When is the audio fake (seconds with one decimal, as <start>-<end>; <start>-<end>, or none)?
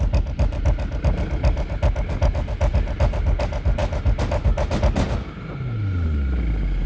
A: none